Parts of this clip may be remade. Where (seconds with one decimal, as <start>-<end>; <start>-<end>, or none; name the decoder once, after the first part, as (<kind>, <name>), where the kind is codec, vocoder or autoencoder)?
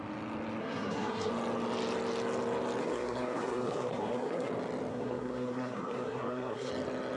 0.6-1.3 (codec, SNAC); 2.8-4.5; 4.9-6.7